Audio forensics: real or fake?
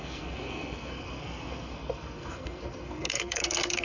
fake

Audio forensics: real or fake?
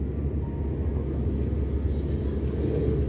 real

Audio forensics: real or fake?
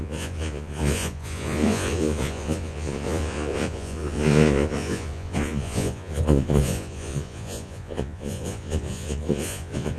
fake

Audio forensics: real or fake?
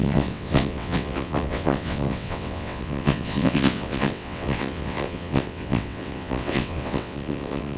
fake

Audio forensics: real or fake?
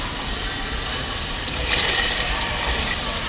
real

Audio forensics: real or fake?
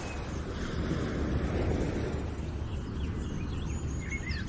real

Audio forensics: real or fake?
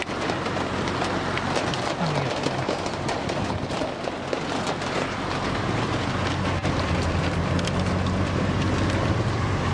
real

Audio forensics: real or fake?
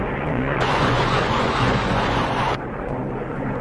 fake